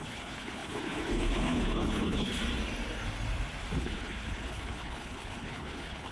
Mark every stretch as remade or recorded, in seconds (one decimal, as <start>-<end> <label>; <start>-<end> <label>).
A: 0.0-2.4 remade; 2.4-3.8 recorded; 3.8-6.1 remade